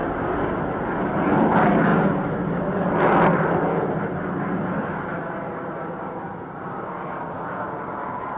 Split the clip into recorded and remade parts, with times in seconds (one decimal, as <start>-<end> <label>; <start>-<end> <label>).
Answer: 0.0-8.4 recorded